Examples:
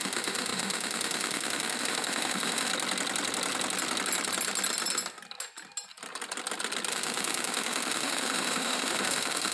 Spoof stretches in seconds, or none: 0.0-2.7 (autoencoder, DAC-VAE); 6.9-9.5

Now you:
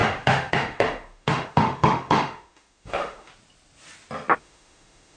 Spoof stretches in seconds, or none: 0.0-3.3 (autoencoder, DAC-VAE); 4.4-5.2